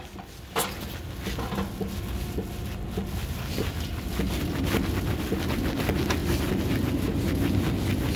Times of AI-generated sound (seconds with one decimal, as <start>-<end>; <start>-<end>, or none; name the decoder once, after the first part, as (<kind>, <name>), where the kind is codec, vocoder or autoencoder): none